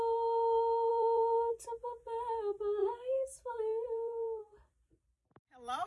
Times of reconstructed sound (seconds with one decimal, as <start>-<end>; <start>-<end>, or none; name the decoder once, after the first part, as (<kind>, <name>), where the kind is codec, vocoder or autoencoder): 0.9-2.3 (vocoder, BigVGAN v2); 2.8-5.9